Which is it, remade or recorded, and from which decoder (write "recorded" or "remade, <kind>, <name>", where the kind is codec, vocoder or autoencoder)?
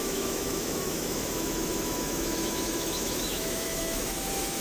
remade, autoencoder, DAC-VAE